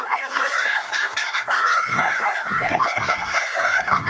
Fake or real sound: fake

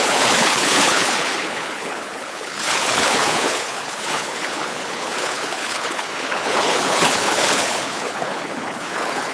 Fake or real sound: fake